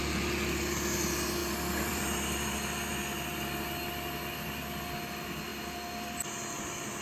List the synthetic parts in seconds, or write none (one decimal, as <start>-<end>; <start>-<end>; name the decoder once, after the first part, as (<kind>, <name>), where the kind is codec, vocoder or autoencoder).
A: 1.4-2.0 (vocoder, BigVGAN v2)